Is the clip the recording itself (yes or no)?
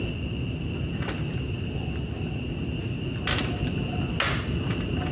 yes